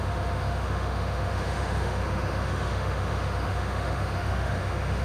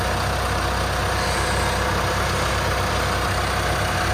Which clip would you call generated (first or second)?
first